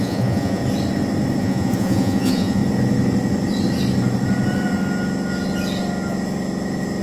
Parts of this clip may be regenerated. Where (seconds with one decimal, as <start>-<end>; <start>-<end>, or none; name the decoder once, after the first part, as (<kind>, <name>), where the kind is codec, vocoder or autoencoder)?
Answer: 0.0-0.6 (vocoder, Vocos); 1.4-2.6